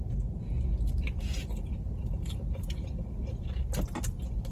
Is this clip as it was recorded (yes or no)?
yes